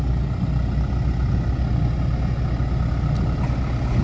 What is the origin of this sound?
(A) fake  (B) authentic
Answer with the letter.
B